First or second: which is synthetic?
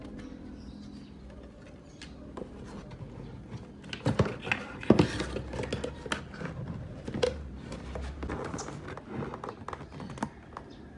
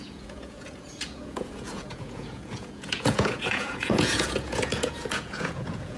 second